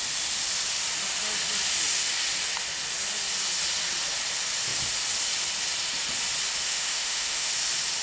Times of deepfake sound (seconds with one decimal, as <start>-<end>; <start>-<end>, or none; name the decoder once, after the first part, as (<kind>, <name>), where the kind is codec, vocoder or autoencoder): 6.6-7.5 (autoencoder, DAC-VAE)